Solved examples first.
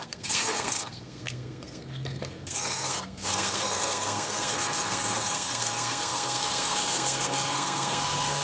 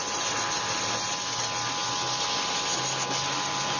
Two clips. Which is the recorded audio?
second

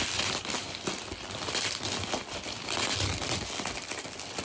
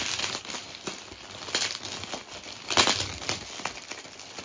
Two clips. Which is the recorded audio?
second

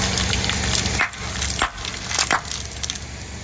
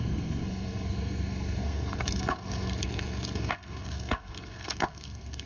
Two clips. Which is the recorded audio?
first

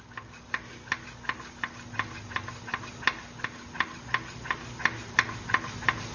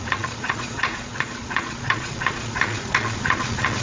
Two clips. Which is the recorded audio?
first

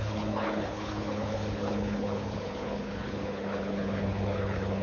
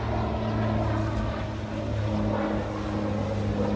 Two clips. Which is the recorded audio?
second